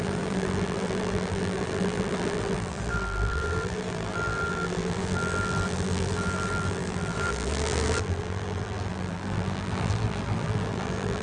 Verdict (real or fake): fake